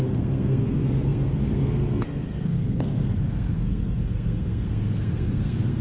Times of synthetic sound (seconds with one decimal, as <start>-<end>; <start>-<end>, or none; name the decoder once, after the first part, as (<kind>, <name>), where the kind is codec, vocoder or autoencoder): 0.0-5.8 (codec, SNAC)